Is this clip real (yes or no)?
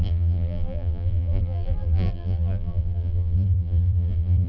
no